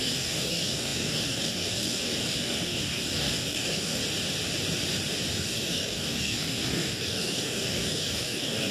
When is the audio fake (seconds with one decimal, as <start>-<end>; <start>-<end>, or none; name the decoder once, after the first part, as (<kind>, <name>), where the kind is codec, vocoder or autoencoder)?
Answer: 0.0-4.0 (codec, DAC); 5.3-8.7